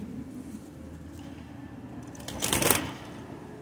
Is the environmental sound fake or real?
real